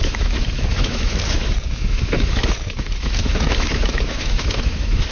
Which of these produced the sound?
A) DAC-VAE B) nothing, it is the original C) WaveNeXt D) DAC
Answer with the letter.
A